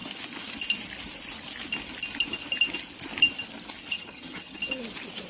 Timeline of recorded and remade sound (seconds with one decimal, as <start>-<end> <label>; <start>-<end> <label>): 0.0-3.8 recorded; 3.8-4.6 remade; 4.6-5.3 recorded

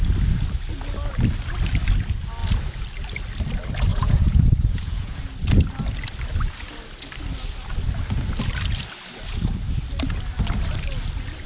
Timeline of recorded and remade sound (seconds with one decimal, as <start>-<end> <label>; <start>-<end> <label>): 0.0-3.9 recorded; 3.9-5.2 remade; 5.2-11.5 recorded

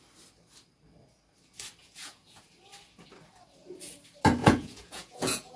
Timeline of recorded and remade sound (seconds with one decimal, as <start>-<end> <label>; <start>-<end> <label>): 0.0-1.8 recorded; 1.8-2.4 remade; 2.4-4.4 recorded; 4.4-5.6 remade

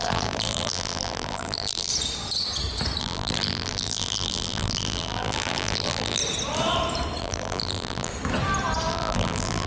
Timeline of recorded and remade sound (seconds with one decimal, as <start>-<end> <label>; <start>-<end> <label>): 0.0-1.9 remade; 1.9-3.0 recorded; 3.0-6.2 remade; 6.2-7.2 recorded; 7.2-8.1 remade; 8.1-8.9 recorded; 8.9-9.7 remade

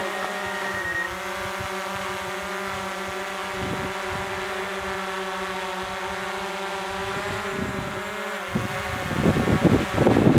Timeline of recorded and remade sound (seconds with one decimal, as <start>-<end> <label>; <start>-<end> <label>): 0.0-7.0 recorded; 7.0-7.9 remade; 7.9-10.4 recorded

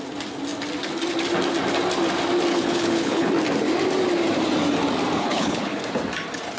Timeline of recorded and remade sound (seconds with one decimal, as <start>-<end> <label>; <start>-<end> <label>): 0.0-2.5 recorded; 2.5-3.3 remade; 3.3-5.2 recorded; 5.2-5.8 remade; 5.8-6.6 recorded